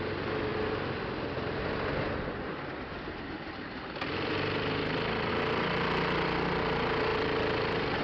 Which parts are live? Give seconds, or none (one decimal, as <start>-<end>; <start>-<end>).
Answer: 0.0-8.0